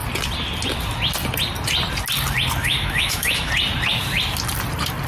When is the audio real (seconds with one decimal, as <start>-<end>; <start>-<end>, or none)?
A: 0.0-2.6; 3.5-5.1